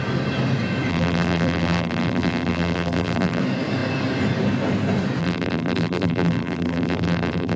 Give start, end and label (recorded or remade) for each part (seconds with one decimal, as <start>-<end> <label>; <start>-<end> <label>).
0.0-0.9 recorded; 0.9-3.4 remade; 3.4-5.2 recorded; 5.2-7.6 remade